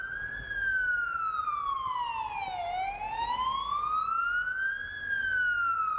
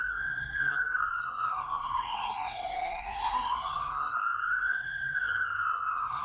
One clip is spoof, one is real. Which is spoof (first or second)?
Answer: second